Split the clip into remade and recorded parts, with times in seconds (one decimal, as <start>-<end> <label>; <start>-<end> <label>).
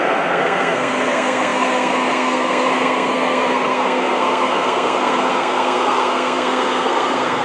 0.0-7.4 remade